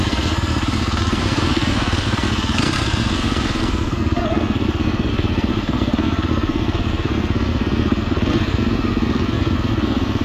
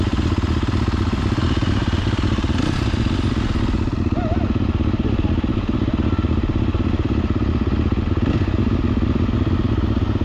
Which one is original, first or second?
second